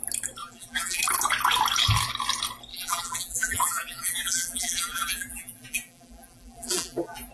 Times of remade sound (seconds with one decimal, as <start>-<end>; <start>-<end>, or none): 0.4-1.0; 2.7-7.3